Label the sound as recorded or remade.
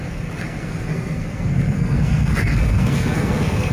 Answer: remade